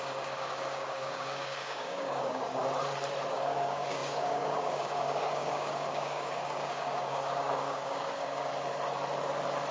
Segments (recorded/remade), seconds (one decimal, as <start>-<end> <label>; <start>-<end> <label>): 0.0-2.6 remade; 2.6-3.3 recorded; 3.3-8.5 remade; 8.5-9.7 recorded